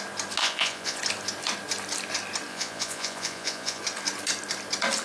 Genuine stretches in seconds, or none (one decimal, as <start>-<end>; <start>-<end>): 0.0-0.4; 1.0-2.5; 3.8-5.0